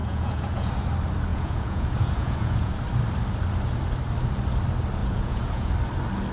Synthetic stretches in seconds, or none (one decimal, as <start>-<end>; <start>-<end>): 0.0-0.7; 1.3-2.7; 5.0-5.7